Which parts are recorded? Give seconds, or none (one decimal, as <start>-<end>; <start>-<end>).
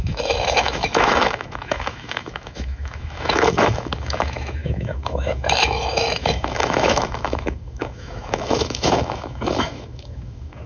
none